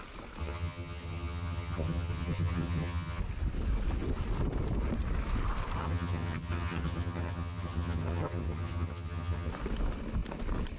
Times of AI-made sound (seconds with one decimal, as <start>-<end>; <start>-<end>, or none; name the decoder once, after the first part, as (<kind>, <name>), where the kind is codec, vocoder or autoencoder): 0.4-3.2 (vocoder, HiFi-GAN); 5.8-9.5